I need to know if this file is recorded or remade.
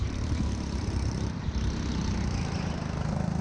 remade